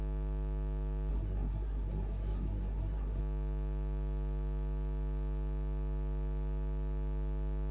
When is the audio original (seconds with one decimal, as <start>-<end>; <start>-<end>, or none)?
0.0-1.1; 3.2-7.7